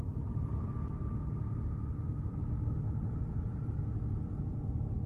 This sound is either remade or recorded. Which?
recorded